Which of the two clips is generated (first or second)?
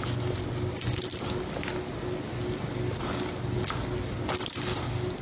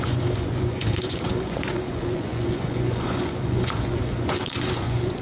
second